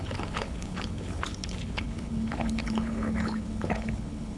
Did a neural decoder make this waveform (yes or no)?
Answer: yes